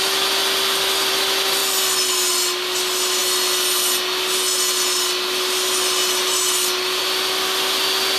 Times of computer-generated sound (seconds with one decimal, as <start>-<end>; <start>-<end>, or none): none